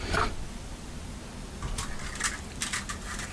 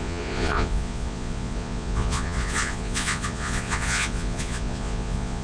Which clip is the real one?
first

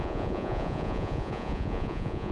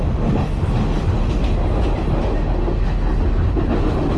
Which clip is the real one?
second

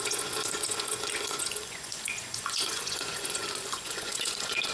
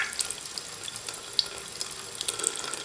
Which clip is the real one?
second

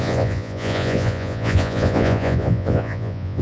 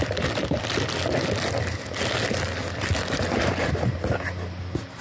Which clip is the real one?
second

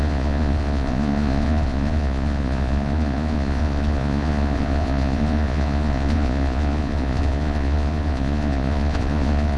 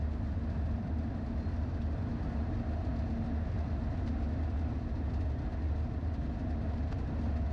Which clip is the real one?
second